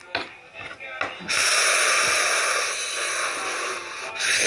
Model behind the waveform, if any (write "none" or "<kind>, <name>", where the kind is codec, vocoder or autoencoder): none